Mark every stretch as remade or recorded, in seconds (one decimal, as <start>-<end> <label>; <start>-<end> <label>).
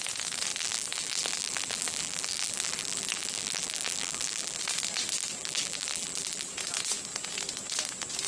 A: 0.0-0.5 recorded; 0.5-4.6 remade; 4.6-5.4 recorded; 5.4-6.5 remade; 6.5-8.3 recorded